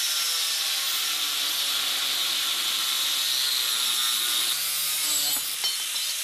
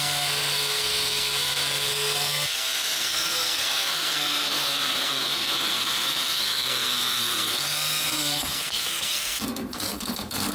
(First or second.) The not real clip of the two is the second